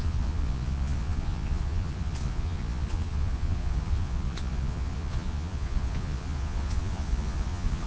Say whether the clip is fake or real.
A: fake